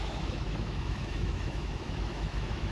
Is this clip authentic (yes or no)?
no